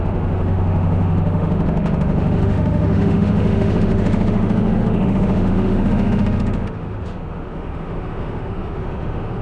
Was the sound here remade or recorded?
remade